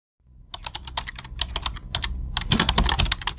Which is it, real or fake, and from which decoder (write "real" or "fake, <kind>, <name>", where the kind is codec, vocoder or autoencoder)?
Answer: real